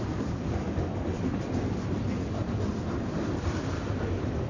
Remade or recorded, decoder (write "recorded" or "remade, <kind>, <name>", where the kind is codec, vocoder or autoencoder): remade, vocoder, BigVGAN v2